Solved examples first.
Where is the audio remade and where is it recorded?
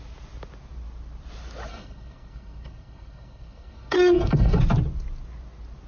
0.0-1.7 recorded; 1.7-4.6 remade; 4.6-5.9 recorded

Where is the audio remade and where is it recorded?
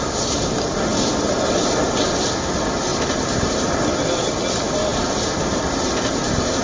0.0-2.9 recorded; 2.9-3.7 remade; 3.7-4.9 recorded; 4.9-6.6 remade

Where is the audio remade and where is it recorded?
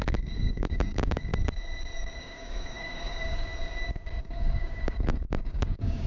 0.0-1.3 remade; 1.3-2.2 recorded; 2.2-3.5 remade; 3.5-4.2 recorded; 4.2-6.1 remade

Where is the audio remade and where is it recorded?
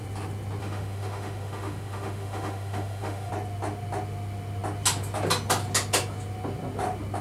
0.0-0.6 recorded; 0.6-3.3 remade; 3.3-7.2 recorded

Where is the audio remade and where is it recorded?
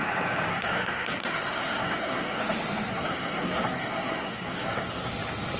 0.0-0.5 recorded; 0.5-2.4 remade; 2.4-2.9 recorded; 2.9-5.1 remade; 5.1-5.6 recorded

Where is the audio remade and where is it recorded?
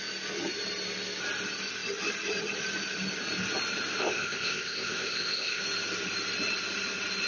0.0-4.0 recorded; 4.0-5.6 remade; 5.6-7.3 recorded